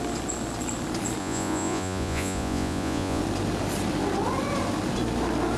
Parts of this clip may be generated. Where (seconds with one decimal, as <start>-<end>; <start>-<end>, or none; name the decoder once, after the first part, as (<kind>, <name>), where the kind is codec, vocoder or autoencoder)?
1.2-3.2 (vocoder, Vocos)